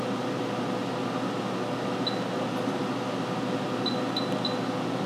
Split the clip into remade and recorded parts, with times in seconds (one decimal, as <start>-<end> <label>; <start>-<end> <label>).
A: 0.0-5.1 recorded